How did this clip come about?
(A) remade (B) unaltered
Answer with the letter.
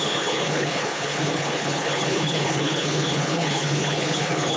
A